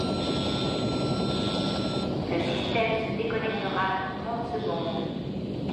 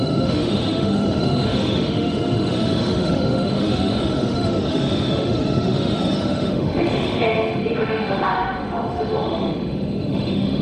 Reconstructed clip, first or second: second